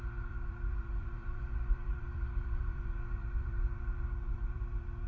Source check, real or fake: fake